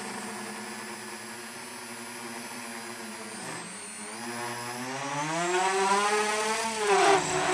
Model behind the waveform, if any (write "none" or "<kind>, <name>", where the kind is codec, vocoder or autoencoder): none